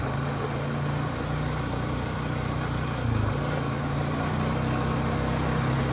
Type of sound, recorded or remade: recorded